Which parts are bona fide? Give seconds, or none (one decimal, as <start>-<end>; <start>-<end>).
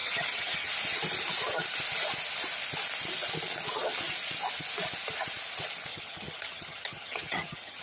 0.7-5.9